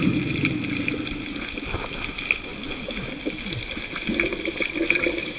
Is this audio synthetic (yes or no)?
no